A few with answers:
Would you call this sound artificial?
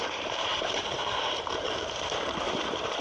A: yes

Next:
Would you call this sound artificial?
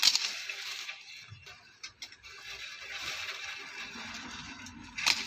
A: no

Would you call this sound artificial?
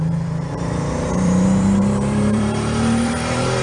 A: yes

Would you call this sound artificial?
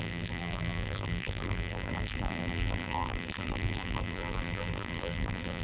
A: yes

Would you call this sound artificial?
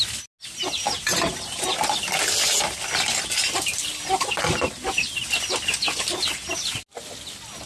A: no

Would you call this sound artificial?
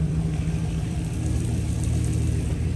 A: yes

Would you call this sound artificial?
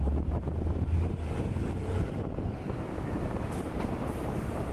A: yes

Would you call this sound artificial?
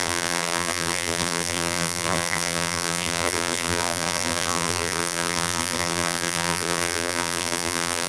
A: yes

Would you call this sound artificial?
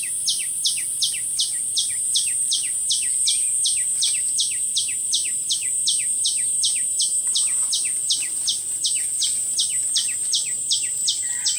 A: no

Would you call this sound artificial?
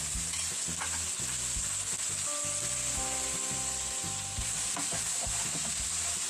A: no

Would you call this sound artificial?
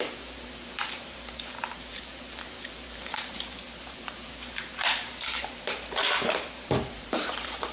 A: yes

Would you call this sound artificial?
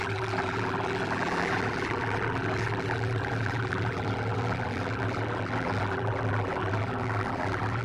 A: yes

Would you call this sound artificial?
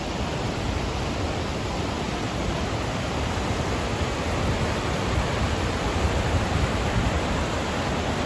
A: yes